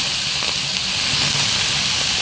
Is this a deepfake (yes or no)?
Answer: no